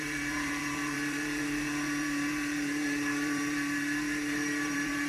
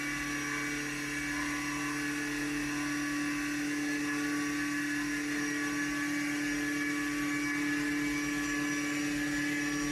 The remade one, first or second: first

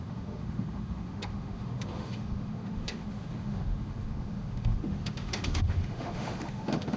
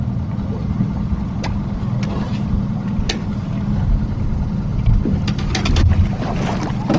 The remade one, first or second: first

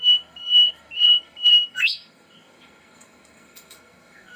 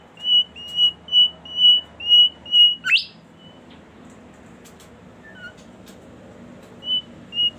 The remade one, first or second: first